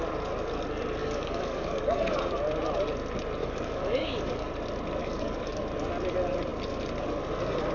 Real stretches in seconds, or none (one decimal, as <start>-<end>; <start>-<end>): 0.0-1.0; 2.3-3.4; 4.5-5.0; 5.6-7.7